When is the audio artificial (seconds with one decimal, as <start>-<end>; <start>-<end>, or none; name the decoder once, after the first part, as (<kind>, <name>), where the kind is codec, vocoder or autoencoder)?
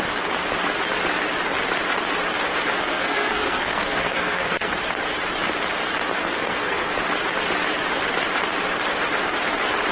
2.9-4.7 (codec, SNAC); 6.3-6.9